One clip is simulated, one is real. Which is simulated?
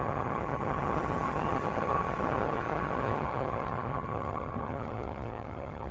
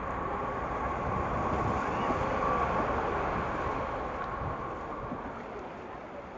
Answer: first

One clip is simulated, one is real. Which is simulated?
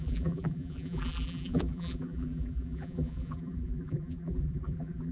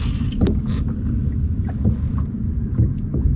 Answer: first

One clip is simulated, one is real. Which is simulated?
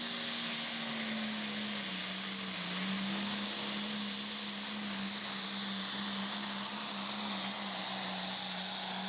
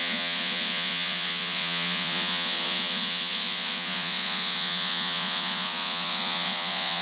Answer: second